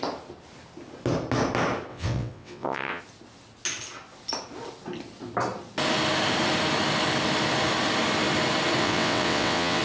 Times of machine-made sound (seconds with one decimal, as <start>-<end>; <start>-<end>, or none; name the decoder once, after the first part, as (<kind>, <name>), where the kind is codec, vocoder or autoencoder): 1.9-3.0 (vocoder, WaveNeXt); 8.8-9.8